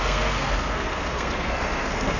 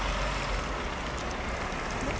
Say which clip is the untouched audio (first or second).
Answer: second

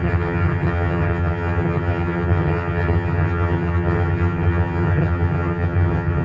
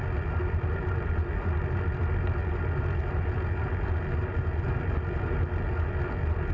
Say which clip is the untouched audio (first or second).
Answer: second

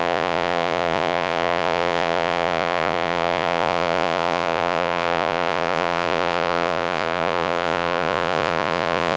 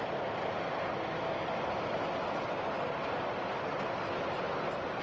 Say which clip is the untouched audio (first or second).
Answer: second